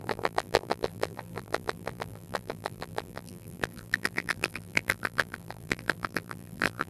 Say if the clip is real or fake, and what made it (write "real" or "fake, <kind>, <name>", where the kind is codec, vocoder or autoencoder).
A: fake, vocoder, BigVGAN v2